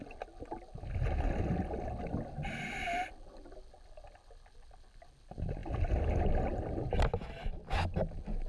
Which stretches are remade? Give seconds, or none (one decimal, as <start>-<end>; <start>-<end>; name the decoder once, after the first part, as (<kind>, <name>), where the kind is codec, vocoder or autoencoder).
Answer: none